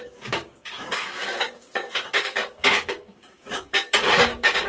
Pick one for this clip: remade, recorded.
remade